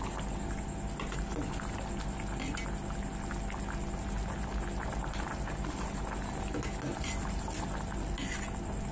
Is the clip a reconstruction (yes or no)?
no